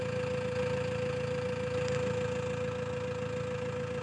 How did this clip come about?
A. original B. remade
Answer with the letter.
A